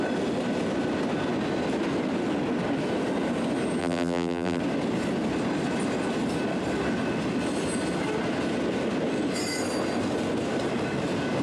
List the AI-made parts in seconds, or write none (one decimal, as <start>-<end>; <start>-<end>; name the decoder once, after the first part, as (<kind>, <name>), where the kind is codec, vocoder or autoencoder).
3.8-4.6 (vocoder, BigVGAN v2)